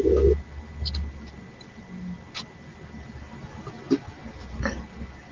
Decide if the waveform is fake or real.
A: real